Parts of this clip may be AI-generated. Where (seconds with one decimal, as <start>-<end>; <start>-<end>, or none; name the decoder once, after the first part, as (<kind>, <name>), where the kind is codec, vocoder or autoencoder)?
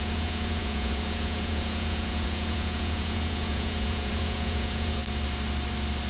0.0-5.0 (vocoder, Vocos)